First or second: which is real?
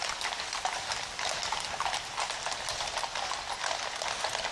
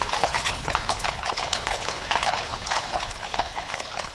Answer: first